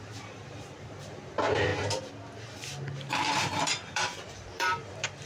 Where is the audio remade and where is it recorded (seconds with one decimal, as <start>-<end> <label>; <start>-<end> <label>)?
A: 0.0-1.7 remade; 1.7-3.1 recorded; 3.1-5.3 remade